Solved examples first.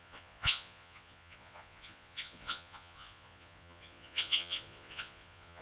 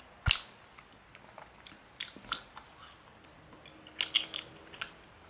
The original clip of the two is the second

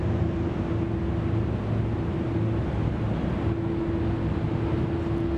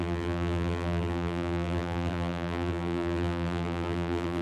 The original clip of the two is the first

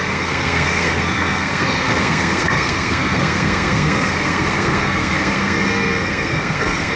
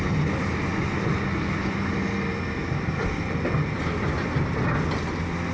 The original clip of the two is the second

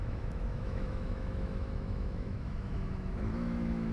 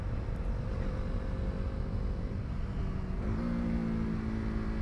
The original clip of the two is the second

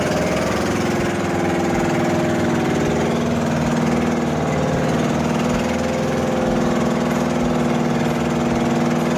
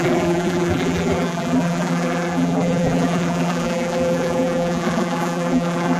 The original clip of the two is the first